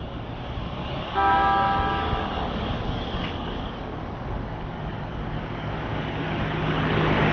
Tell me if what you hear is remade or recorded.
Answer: remade